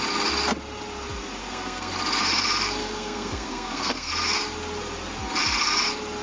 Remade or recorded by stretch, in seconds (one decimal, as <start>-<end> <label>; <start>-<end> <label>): 0.0-1.4 recorded; 1.4-1.9 remade; 1.9-2.8 recorded; 2.8-4.1 remade; 4.1-6.2 recorded